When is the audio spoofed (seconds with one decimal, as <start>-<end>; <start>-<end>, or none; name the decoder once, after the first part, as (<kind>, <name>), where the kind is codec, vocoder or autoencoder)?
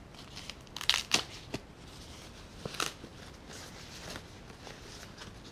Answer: none